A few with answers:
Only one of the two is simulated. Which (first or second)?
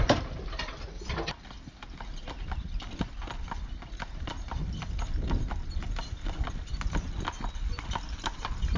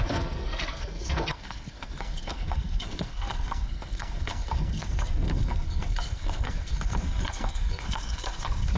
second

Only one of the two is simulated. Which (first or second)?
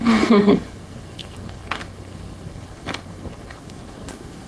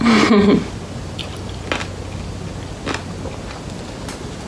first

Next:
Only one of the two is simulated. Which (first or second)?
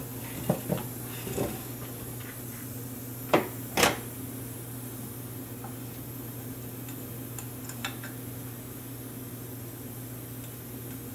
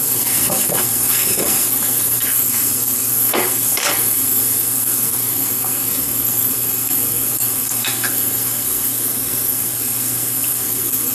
second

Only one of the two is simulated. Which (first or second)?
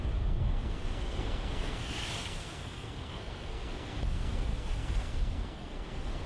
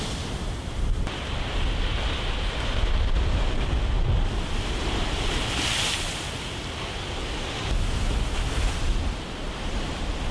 first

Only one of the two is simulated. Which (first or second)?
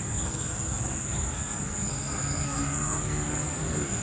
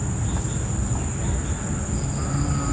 first